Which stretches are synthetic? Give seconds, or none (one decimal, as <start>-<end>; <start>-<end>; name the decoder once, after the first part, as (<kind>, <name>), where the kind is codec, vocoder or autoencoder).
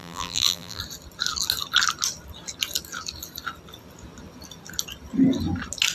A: 0.0-0.8 (vocoder, BigVGAN v2)